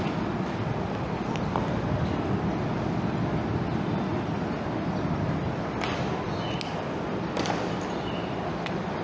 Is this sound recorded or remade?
recorded